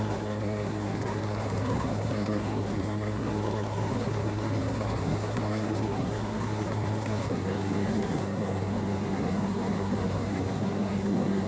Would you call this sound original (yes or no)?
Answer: no